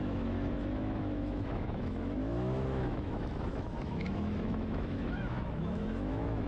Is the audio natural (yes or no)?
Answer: no